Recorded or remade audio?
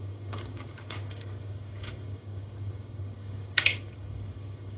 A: remade